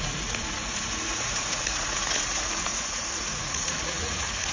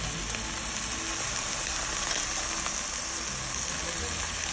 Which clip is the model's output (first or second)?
first